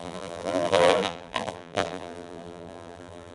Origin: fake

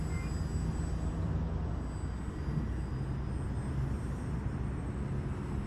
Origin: real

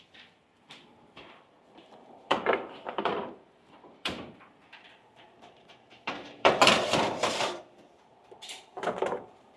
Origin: fake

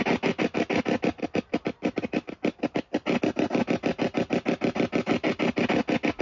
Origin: real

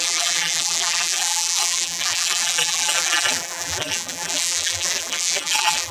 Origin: fake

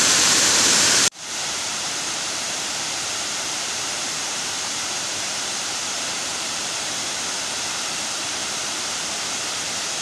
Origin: fake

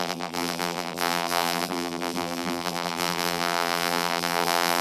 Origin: fake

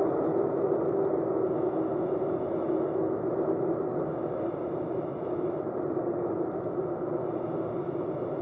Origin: real